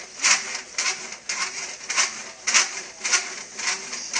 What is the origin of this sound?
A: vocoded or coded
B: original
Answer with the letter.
B